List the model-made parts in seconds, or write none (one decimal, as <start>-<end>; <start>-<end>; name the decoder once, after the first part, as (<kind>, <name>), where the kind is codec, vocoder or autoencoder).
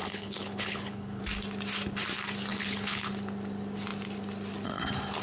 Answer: 0.0-1.2 (codec, HILCodec); 2.5-3.1